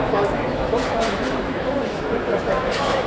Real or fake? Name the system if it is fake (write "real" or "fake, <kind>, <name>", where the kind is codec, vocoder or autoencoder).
fake, autoencoder, DAC-VAE